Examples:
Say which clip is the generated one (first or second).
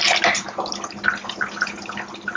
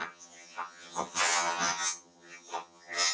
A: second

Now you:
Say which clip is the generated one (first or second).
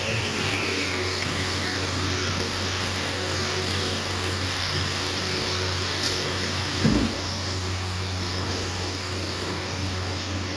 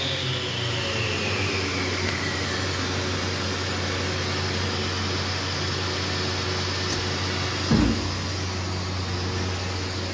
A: first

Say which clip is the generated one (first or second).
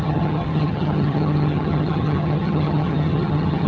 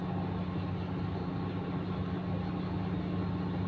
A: first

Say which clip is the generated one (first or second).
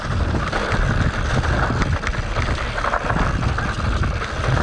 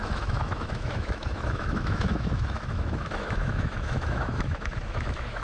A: second